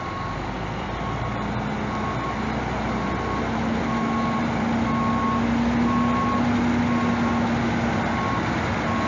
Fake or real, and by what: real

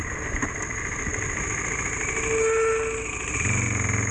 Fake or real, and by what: real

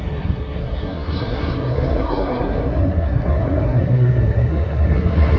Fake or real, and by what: fake, codec, SNAC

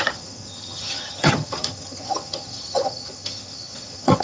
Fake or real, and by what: fake, vocoder, HiFi-GAN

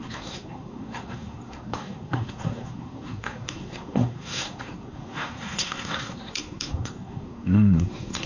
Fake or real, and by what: fake, codec, SNAC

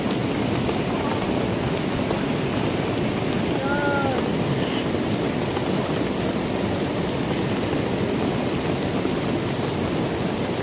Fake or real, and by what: real